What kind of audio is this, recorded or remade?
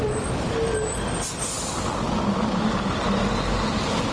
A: recorded